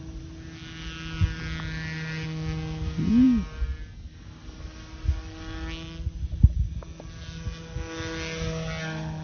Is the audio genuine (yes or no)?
yes